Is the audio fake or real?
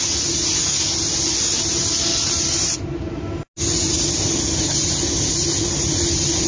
real